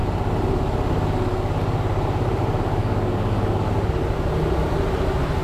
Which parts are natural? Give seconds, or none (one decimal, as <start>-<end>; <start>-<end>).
0.0-2.8; 3.7-5.4